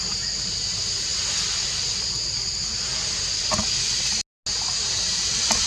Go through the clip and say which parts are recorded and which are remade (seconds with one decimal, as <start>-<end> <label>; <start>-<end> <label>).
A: 0.0-1.1 remade; 1.1-4.5 recorded; 4.5-5.7 remade

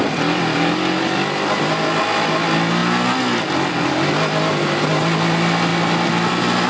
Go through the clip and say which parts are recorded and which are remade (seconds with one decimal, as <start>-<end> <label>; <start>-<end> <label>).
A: 0.0-6.7 recorded

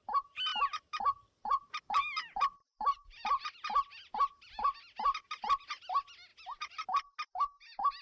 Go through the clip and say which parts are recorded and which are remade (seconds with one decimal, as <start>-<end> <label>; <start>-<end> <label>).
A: 0.0-0.5 recorded; 0.5-4.8 remade; 4.8-8.0 recorded

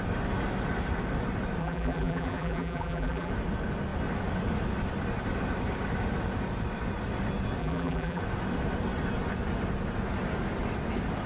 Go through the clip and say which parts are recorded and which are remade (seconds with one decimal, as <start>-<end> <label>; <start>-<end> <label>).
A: 0.0-1.6 recorded; 1.6-3.3 remade; 3.3-7.6 recorded; 7.6-8.2 remade; 8.2-11.3 recorded

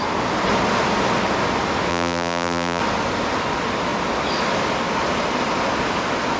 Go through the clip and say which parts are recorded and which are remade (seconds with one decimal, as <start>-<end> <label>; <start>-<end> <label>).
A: 0.0-1.9 recorded; 1.9-2.8 remade; 2.8-6.4 recorded

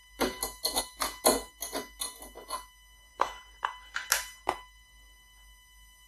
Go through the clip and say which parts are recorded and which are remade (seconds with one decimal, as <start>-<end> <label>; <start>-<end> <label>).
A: 0.0-3.1 recorded; 3.1-3.6 remade; 3.6-6.1 recorded